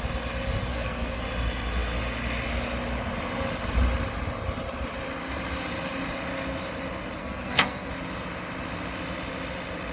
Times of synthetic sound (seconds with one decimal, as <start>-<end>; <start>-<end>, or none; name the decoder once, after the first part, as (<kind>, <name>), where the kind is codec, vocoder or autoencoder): 0.7-1.2 (codec, SNAC); 7.2-7.9